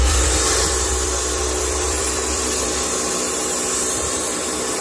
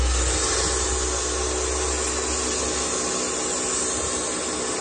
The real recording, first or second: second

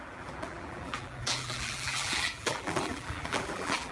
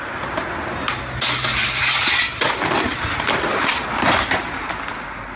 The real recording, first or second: second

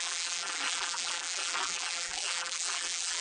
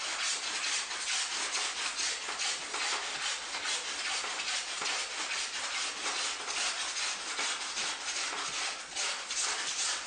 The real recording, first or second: second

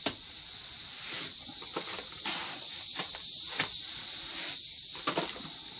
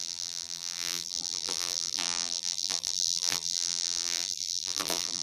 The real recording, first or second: first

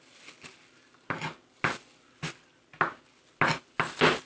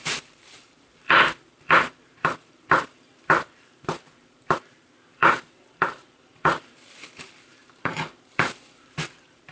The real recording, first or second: first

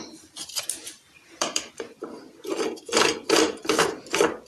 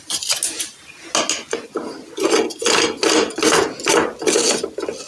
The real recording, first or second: second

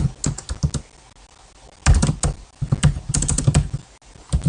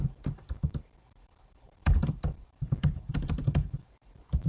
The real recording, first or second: first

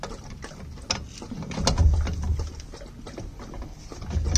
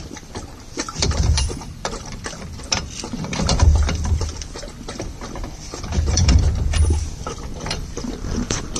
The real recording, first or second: first